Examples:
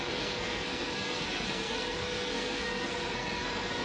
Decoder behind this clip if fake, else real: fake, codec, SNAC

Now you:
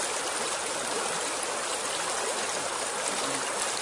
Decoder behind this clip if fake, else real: real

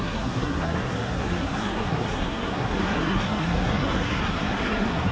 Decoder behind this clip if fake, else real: fake, codec, SNAC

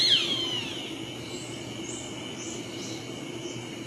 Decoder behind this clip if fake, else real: real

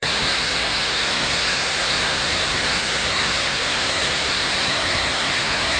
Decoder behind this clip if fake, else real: fake, codec, SNAC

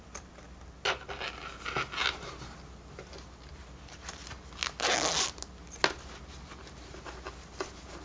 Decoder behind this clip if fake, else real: real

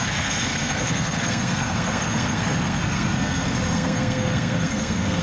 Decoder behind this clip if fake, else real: fake, codec, SNAC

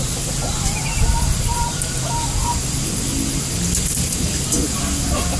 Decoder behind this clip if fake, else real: real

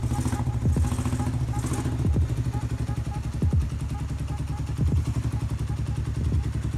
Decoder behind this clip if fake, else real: real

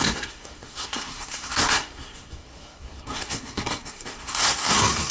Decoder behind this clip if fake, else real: fake, codec, SNAC